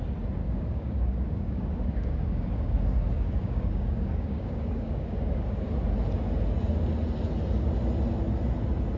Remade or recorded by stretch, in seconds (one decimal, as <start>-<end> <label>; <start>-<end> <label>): 0.0-0.4 recorded; 0.4-5.6 remade; 5.6-9.0 recorded